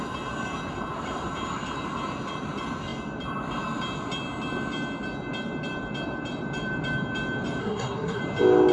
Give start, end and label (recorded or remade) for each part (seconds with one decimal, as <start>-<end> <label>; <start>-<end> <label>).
0.0-7.6 recorded; 7.6-8.2 remade; 8.2-8.7 recorded

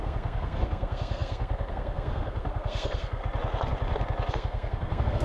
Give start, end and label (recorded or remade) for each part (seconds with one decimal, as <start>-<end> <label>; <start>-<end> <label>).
0.0-3.2 remade; 3.2-4.3 recorded; 4.3-5.2 remade

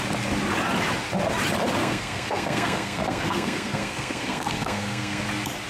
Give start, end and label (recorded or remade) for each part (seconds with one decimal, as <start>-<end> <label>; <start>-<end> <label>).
0.0-1.8 recorded; 1.8-5.2 remade; 5.2-5.7 recorded

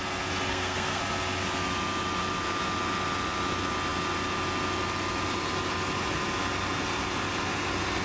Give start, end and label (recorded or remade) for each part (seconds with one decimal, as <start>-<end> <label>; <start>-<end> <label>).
0.0-0.5 recorded; 0.5-1.0 remade; 1.0-8.0 recorded

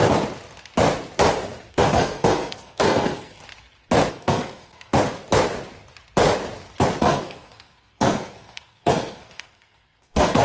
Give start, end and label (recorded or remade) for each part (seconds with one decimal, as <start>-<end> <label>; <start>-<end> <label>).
0.0-1.7 recorded; 1.7-3.4 remade; 3.4-4.1 recorded; 4.1-4.9 remade; 4.9-7.0 recorded; 7.0-10.4 remade

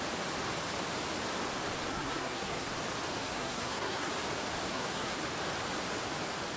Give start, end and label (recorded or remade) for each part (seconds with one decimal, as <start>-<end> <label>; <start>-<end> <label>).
0.0-1.9 recorded; 1.9-2.7 remade; 2.7-3.2 recorded; 3.2-4.1 remade; 4.1-4.7 recorded; 4.7-5.2 remade; 5.2-6.6 recorded